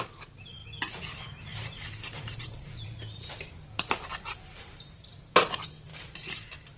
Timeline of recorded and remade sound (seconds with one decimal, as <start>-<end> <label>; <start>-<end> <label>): 0.0-0.6 remade; 0.6-1.1 recorded; 1.1-6.8 remade

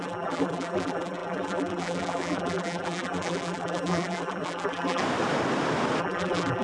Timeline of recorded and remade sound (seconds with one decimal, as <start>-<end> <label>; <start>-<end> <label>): 0.0-5.0 remade; 5.0-6.0 recorded; 6.0-6.6 remade

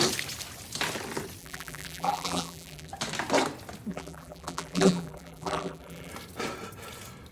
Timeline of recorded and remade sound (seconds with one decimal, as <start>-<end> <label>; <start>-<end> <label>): 0.0-1.4 recorded; 1.4-2.9 remade; 2.9-3.9 recorded; 3.9-6.1 remade; 6.1-7.3 recorded

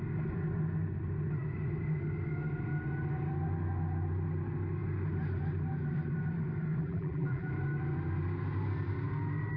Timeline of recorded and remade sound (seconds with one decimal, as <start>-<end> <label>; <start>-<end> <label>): 0.0-6.8 recorded; 6.8-7.5 remade; 7.5-9.6 recorded

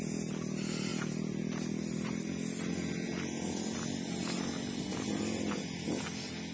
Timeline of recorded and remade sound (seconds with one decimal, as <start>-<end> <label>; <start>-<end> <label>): 0.0-6.5 recorded